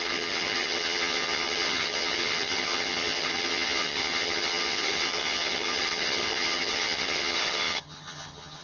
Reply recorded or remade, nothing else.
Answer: remade